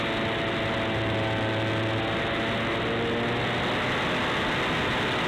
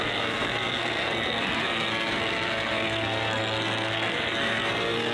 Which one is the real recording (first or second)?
first